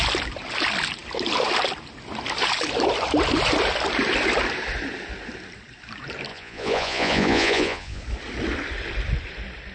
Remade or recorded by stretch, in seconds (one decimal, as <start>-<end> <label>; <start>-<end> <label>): 0.0-6.3 recorded; 6.3-8.0 remade; 8.0-9.7 recorded